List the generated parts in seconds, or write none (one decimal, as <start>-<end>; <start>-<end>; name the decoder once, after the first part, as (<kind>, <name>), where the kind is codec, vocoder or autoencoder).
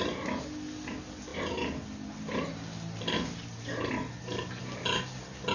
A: none